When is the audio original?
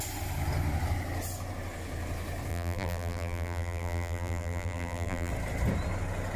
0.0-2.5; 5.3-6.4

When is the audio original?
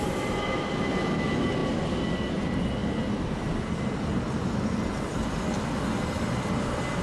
0.0-7.0